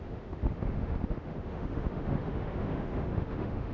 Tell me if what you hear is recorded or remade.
remade